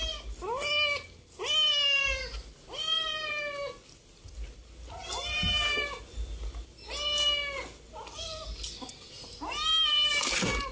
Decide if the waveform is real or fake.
real